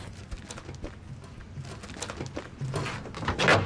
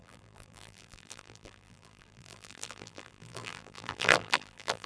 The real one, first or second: first